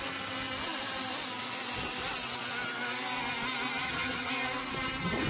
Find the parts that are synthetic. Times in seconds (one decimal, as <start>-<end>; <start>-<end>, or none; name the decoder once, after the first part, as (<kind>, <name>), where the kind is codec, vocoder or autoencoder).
3.8-4.3 (vocoder, HiFi-GAN)